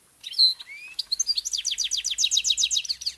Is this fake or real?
real